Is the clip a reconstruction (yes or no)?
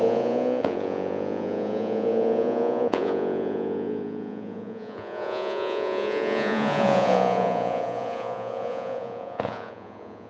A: yes